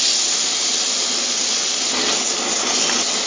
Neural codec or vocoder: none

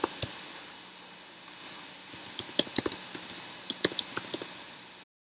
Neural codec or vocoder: none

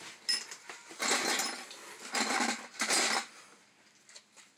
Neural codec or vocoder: none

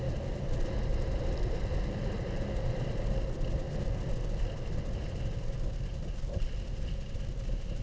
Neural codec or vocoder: none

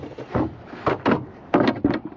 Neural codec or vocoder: none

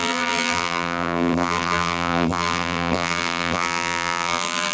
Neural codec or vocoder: vocoder, BigVGAN v2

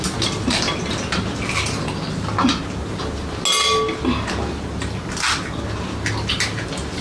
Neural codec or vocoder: none